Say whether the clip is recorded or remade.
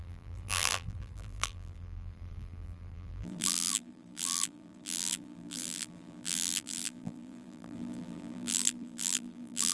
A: remade